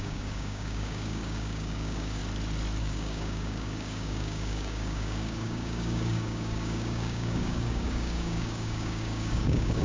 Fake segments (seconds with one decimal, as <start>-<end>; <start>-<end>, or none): 0.0-2.2; 2.8-9.8